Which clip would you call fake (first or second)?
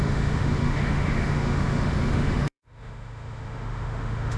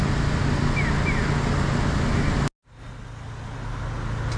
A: first